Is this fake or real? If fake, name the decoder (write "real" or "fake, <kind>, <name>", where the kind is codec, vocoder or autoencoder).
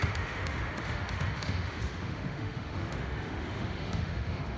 fake, autoencoder, DAC-VAE